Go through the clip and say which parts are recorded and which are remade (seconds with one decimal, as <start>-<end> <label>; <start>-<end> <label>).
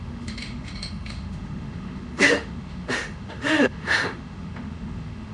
0.0-5.3 remade